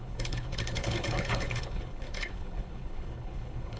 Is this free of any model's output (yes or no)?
no